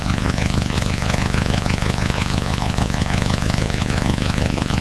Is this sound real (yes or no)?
no